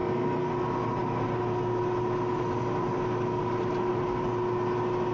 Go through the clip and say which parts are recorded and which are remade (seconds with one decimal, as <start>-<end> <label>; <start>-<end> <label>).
0.0-0.5 remade; 0.5-5.1 recorded